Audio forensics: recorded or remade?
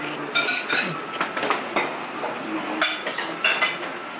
recorded